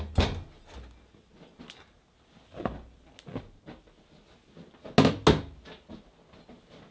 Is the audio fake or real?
real